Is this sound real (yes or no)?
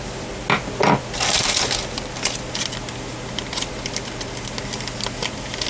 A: yes